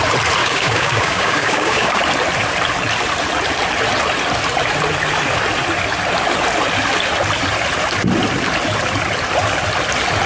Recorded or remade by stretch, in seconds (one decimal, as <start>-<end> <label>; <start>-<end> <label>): 0.0-0.4 recorded; 0.4-2.0 remade; 2.0-10.3 recorded